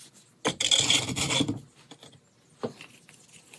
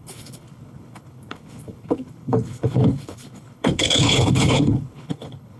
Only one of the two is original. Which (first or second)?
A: first